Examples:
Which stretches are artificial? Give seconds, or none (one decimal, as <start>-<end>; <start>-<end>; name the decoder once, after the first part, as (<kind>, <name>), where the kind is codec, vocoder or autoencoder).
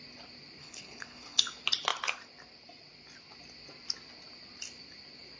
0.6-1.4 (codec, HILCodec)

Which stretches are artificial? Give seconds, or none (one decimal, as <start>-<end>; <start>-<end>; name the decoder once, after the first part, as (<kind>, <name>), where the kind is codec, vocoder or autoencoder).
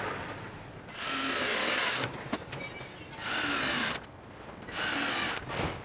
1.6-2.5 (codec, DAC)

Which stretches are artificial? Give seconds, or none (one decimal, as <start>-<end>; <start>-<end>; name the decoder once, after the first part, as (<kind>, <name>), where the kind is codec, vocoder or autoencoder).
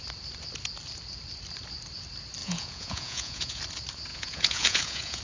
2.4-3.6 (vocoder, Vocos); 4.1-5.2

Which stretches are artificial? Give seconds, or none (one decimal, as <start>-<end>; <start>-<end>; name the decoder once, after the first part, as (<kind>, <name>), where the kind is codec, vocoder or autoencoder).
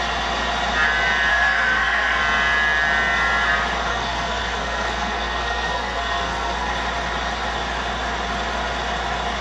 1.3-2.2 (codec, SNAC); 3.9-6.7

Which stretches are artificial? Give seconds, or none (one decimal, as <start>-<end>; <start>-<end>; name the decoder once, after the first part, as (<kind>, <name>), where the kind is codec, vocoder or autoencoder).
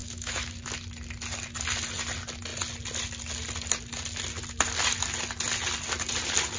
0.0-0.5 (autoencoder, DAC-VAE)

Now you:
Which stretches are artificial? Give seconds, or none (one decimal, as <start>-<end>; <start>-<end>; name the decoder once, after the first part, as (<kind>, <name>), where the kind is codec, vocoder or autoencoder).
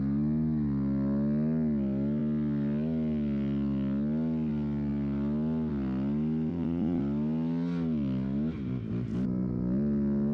6.5-7.0 (vocoder, Vocos)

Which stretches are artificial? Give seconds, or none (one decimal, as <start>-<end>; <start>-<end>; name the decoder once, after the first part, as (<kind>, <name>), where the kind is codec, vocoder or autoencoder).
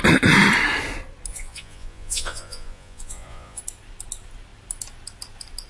1.3-3.6 (vocoder, Vocos)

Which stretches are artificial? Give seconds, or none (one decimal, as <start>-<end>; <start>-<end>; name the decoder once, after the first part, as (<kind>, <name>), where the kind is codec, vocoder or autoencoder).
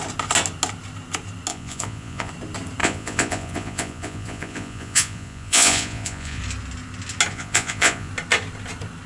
1.5-2.3 (vocoder, Vocos); 2.8-6.4; 7.3-8.1